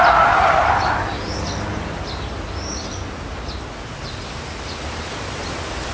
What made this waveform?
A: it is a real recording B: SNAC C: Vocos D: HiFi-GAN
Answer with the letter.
A